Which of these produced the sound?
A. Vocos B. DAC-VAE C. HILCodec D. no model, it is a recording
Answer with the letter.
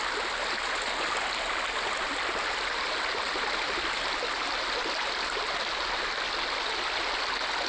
D